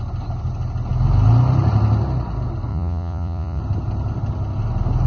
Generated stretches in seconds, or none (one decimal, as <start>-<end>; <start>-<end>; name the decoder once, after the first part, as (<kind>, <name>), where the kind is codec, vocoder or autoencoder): 2.7-3.6 (vocoder, Vocos)